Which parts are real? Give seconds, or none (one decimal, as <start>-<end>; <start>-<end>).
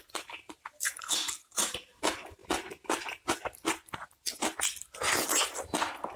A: 2.4-6.2